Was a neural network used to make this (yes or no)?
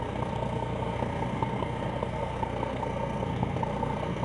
yes